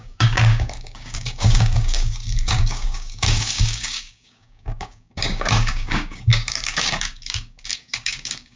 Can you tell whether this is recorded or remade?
remade